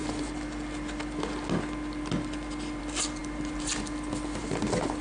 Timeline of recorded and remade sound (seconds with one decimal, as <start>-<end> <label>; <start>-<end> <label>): 0.0-5.0 recorded